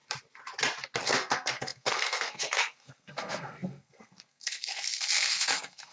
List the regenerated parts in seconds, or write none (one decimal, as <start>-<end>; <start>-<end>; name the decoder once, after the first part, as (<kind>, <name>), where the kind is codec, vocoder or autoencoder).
1.0-5.9 (codec, SNAC)